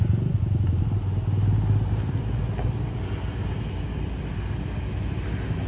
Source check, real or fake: real